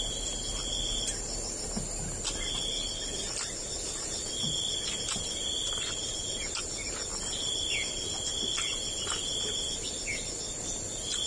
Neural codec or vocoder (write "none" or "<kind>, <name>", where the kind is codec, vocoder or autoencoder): none